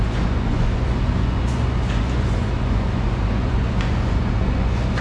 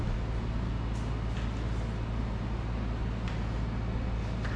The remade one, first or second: first